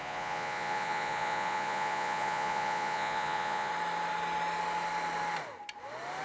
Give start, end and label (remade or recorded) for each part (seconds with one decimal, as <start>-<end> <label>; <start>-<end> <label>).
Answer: 0.0-3.7 remade; 3.7-6.2 recorded